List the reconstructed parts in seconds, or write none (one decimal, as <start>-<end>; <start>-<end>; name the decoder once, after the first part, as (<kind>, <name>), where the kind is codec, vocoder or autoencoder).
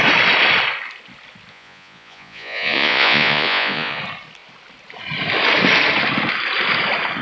1.5-4.0 (vocoder, Vocos)